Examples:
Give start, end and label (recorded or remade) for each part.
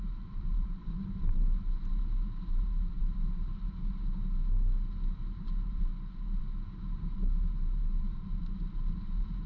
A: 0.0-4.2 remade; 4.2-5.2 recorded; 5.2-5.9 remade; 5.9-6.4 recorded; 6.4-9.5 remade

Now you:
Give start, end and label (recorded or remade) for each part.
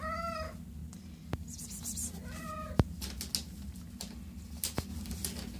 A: 0.0-0.8 recorded; 0.8-1.6 remade; 1.6-2.2 recorded; 2.2-3.0 remade; 3.0-5.6 recorded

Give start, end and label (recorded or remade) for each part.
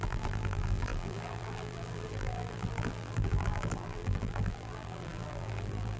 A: 0.0-6.0 remade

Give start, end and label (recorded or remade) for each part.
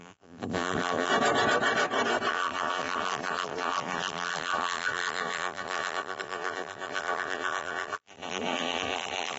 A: 0.0-1.1 remade; 1.1-2.3 recorded; 2.3-9.4 remade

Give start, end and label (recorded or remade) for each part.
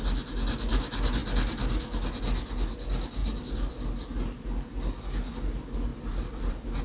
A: 0.0-3.2 recorded; 3.2-3.7 remade; 3.7-5.9 recorded; 5.9-6.8 remade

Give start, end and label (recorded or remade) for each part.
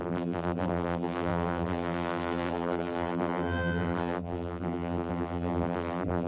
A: 0.0-6.3 remade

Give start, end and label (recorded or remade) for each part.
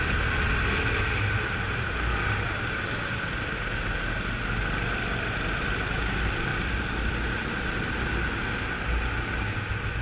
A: 0.0-6.5 recorded; 6.5-7.1 remade; 7.1-10.0 recorded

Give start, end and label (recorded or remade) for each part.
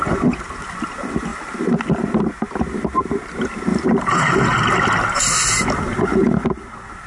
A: 0.0-3.7 recorded; 3.7-4.2 remade; 4.2-7.1 recorded